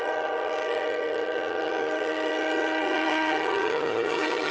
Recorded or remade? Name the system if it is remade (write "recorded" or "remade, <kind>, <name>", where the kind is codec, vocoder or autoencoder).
remade, vocoder, HiFi-GAN